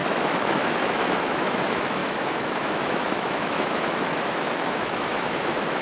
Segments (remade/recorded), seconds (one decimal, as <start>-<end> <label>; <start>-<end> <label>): 0.0-5.8 remade